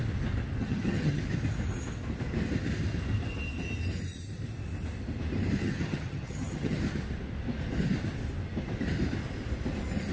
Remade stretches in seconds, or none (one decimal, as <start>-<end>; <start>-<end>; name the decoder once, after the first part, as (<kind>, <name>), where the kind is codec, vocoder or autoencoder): 0.6-1.2 (vocoder, HiFi-GAN); 5.6-6.8